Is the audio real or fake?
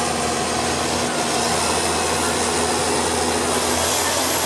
real